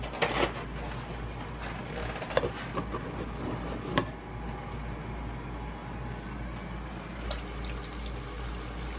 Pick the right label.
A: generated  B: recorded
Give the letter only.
B